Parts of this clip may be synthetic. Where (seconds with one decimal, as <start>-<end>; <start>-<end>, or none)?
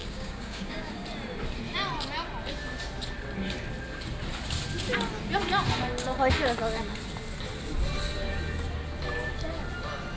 0.0-0.9